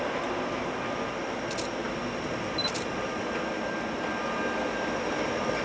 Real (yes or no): yes